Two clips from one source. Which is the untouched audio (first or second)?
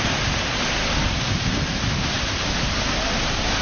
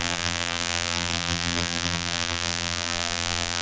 first